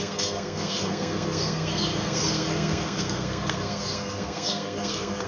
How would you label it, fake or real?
fake